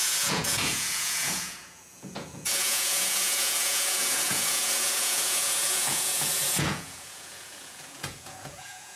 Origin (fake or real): fake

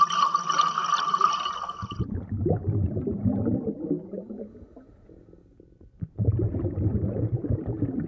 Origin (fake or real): real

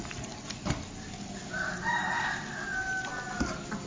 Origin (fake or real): real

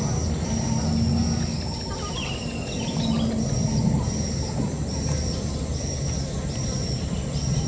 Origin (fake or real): real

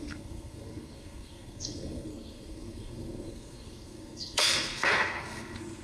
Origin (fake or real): fake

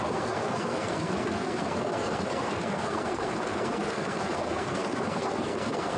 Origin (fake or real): fake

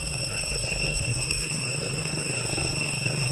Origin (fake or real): fake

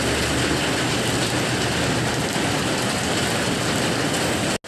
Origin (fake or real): real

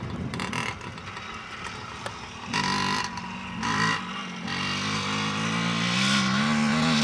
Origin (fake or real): real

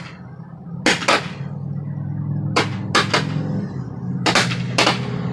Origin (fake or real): real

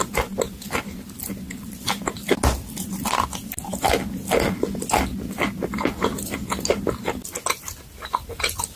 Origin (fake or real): real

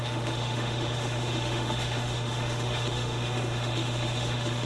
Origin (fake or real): fake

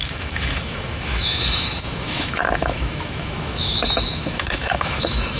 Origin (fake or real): fake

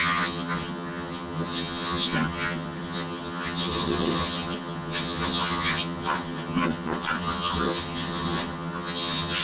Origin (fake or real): fake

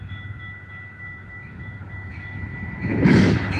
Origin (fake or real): fake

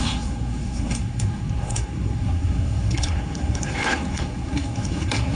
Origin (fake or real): fake